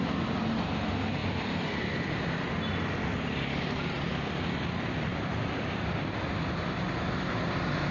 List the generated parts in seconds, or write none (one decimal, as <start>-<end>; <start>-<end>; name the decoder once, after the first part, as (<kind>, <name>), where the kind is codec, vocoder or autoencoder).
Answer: 1.2-4.5 (vocoder, BigVGAN v2); 5.1-6.0